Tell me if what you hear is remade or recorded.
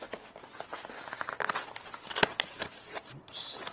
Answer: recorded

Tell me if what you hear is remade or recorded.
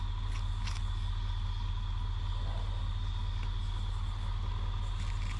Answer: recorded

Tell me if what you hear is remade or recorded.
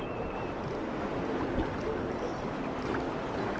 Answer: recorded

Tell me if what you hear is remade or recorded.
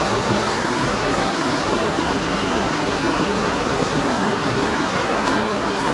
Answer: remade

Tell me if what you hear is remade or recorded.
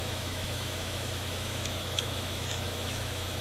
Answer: remade